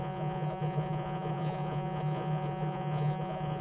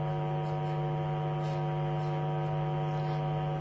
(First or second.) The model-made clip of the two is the first